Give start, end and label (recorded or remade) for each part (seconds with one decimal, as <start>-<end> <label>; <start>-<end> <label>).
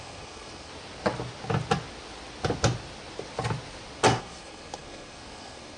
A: 0.0-0.7 remade; 0.7-4.2 recorded; 4.2-5.8 remade